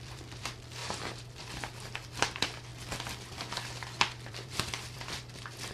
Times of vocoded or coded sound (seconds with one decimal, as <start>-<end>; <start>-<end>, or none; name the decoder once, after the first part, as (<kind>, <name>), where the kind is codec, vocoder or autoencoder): 0.0-0.8 (vocoder, BigVGAN v2); 1.4-2.7; 4.3-5.7